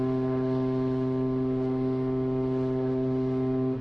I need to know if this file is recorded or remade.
recorded